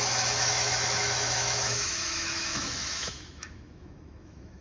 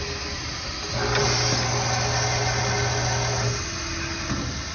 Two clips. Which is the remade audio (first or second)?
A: first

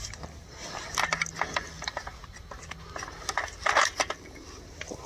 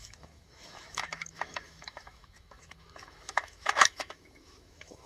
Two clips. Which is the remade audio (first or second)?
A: second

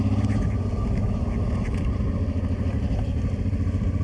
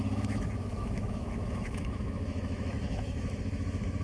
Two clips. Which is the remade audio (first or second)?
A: second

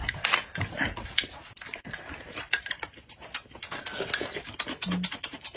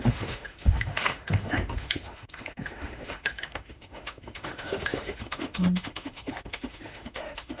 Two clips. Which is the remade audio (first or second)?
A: second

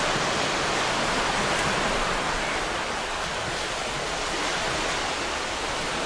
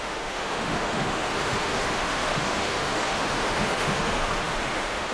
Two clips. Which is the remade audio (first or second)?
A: second